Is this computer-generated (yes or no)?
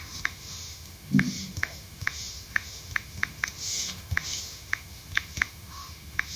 yes